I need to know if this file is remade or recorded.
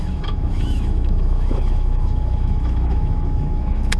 remade